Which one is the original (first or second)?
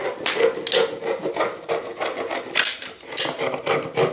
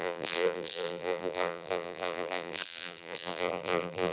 first